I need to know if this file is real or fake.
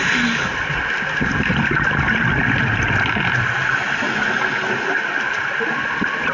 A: real